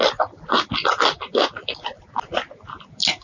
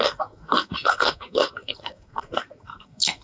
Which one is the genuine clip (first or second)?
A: first